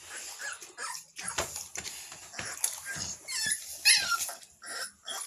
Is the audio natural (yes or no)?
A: yes